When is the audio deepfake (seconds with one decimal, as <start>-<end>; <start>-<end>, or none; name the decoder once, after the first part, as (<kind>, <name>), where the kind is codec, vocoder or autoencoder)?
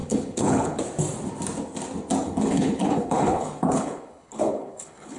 0.0-0.8 (codec, HILCodec); 2.2-5.2